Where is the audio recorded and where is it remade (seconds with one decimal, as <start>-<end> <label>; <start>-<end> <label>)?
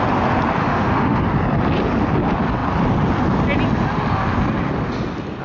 0.0-0.6 recorded; 0.6-1.2 remade; 1.2-5.4 recorded